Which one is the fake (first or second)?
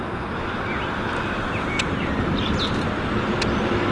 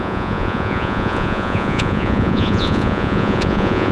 second